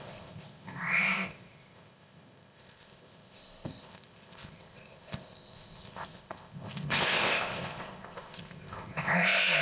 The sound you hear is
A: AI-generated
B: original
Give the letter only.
A